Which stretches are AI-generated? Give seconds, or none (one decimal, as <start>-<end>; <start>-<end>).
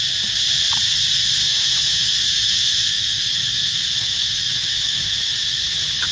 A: 1.4-5.1